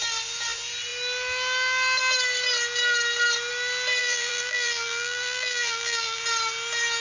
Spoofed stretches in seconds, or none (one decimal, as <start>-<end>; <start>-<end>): 4.0-6.2